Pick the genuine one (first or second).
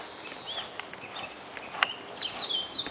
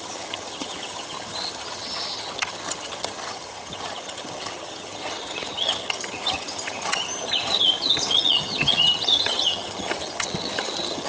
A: first